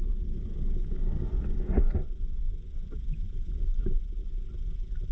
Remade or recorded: recorded